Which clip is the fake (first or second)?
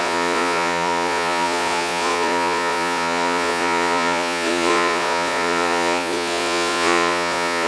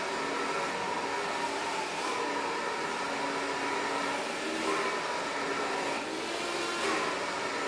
first